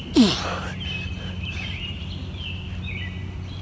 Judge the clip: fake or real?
real